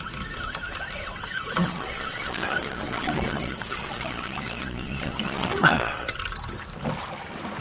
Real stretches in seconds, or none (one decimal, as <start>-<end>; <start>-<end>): 0.0-1.6; 6.2-7.6

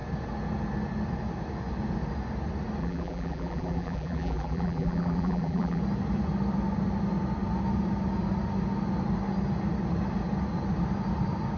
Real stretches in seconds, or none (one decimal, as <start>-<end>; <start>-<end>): 0.0-2.8; 5.8-11.6

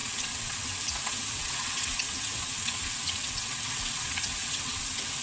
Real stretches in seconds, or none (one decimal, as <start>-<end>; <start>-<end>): none

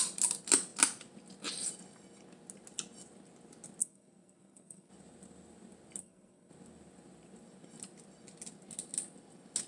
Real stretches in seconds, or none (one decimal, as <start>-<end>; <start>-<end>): 0.0-3.8; 4.9-6.0; 6.5-9.7

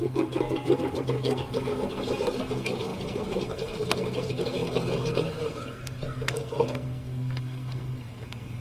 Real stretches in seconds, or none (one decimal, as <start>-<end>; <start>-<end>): none